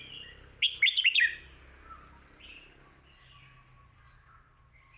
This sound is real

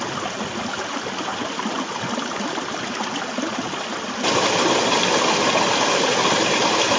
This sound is real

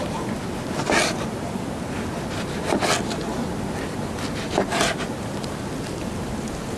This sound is real